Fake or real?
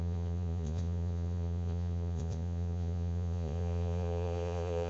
fake